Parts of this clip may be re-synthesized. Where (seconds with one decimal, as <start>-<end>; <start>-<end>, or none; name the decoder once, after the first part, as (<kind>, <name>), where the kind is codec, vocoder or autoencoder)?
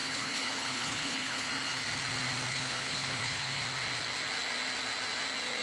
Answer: 0.0-1.5 (codec, HILCodec); 2.5-3.6